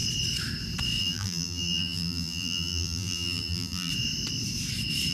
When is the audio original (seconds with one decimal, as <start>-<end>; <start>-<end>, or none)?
0.0-1.0; 3.9-5.1